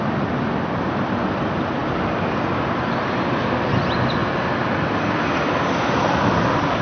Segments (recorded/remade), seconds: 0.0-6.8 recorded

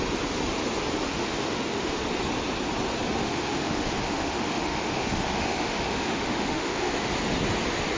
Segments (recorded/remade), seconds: 0.0-1.1 recorded; 1.1-2.0 remade; 2.0-3.2 recorded; 3.2-7.1 remade; 7.1-8.0 recorded

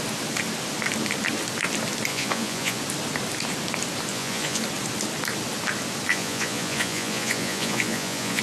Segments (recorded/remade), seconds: 0.0-2.1 recorded; 2.1-2.8 remade; 2.8-4.1 recorded; 4.1-4.6 remade; 4.6-6.1 recorded; 6.1-8.4 remade

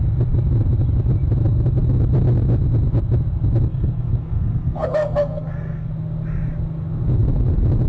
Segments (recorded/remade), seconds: 0.0-3.7 recorded; 3.7-5.9 remade; 5.9-7.9 recorded